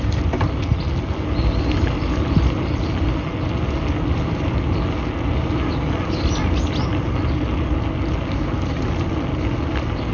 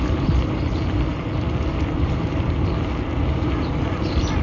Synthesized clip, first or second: second